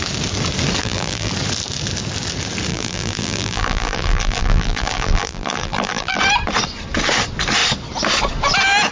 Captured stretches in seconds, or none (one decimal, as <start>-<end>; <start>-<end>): 0.0-0.8; 1.3-2.7; 6.2-8.9